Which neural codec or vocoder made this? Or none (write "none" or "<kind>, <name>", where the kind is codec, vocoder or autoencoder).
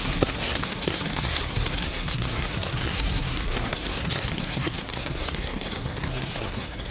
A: codec, SNAC